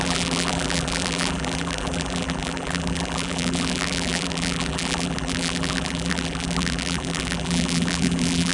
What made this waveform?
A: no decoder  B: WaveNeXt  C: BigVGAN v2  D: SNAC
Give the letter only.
C